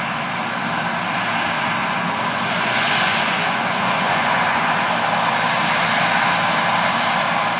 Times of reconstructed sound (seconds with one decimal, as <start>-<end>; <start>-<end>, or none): 1.8-4.7